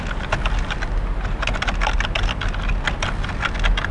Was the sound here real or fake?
real